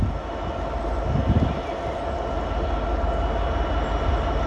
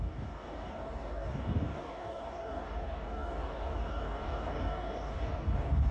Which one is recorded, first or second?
first